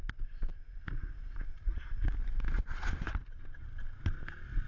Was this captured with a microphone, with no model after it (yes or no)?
yes